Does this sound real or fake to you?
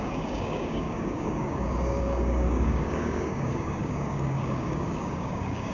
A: fake